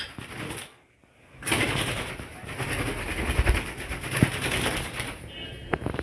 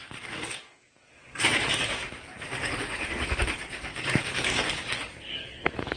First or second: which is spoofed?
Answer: second